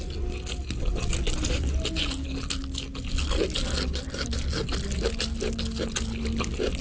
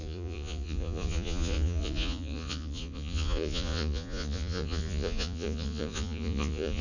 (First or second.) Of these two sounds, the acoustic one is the first